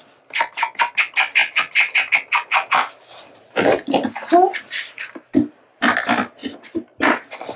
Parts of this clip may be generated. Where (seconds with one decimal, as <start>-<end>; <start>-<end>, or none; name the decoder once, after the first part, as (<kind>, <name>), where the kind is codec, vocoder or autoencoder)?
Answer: 1.4-5.8 (vocoder, BigVGAN v2)